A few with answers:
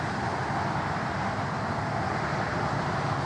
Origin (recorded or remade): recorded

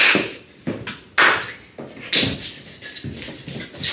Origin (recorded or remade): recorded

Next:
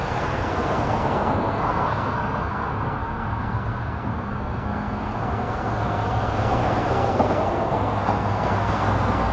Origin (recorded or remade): remade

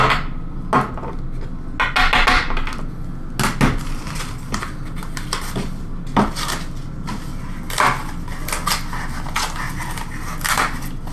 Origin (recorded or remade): recorded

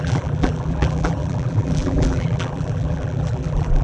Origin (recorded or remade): remade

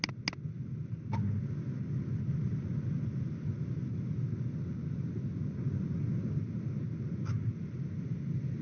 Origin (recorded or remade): recorded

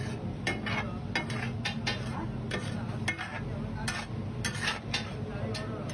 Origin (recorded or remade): recorded